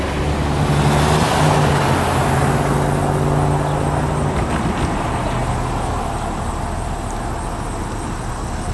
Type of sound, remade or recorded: recorded